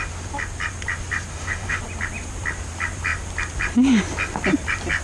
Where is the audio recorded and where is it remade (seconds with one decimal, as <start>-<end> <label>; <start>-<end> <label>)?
0.0-1.3 recorded; 1.3-1.8 remade; 1.8-5.0 recorded